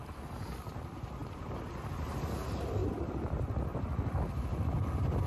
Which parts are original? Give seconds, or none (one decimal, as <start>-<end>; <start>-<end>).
0.0-1.2; 1.9-2.8; 3.8-4.5